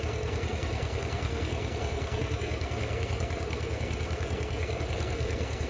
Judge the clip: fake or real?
fake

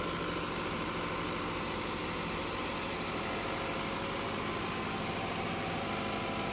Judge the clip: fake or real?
real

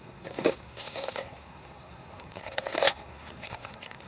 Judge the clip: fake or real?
fake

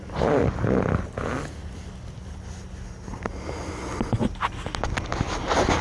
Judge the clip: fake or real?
real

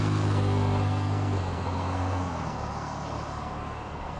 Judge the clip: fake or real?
fake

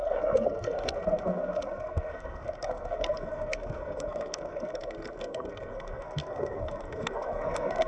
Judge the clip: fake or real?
fake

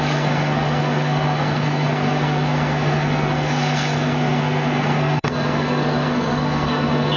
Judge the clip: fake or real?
fake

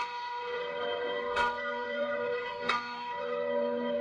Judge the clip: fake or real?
fake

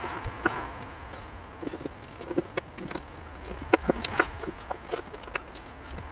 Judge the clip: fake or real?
real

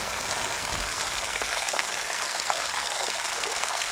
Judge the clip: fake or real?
fake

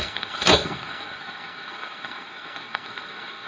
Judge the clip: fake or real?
fake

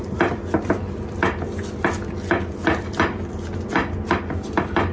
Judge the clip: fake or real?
real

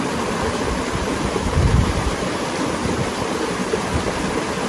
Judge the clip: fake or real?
real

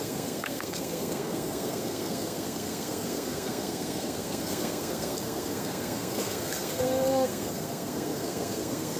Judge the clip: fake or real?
fake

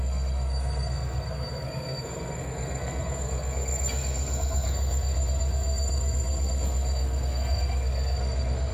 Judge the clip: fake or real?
fake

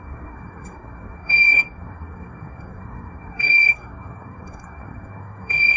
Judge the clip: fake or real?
fake